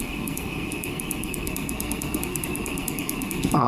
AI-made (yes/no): yes